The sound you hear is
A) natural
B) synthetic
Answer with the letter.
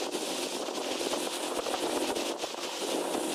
A